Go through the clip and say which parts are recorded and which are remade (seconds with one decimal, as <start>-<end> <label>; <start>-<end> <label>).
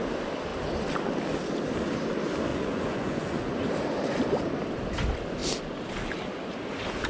0.0-2.5 recorded; 2.5-3.5 remade; 3.5-7.1 recorded